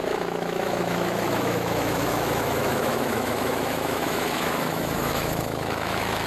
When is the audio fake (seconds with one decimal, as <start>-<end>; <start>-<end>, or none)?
0.0-6.3